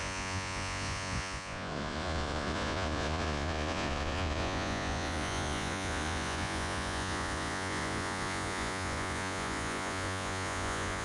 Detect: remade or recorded remade